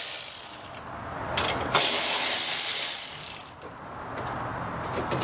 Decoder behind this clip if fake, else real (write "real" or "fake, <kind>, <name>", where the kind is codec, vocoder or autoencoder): real